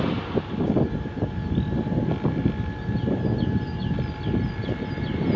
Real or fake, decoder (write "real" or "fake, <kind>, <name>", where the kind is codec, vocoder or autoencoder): real